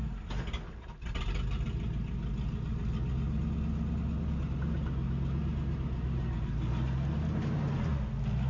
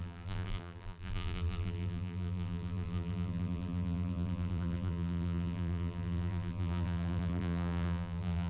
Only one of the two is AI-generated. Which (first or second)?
second